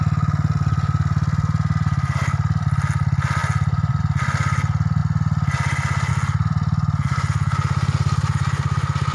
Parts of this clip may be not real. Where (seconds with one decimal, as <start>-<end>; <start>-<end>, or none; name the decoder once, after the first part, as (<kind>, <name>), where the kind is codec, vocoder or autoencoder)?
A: none